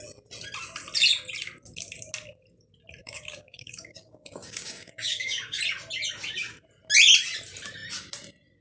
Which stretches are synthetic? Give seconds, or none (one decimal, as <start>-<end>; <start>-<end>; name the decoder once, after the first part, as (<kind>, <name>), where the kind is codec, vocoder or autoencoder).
3.0-5.6 (codec, DAC)